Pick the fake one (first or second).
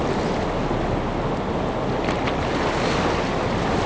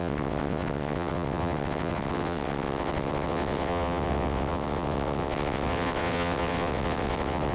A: second